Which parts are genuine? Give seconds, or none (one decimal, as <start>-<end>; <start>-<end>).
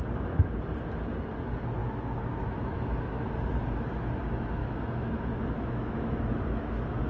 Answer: 0.0-1.8; 3.2-4.6